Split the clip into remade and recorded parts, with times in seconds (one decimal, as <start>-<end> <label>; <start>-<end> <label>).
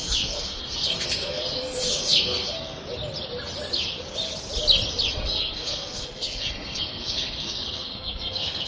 0.0-2.8 remade; 2.8-5.1 recorded; 5.1-8.7 remade